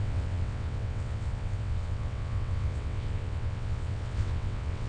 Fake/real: fake